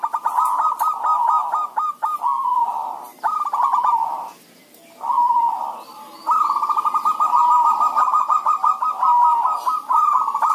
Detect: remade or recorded recorded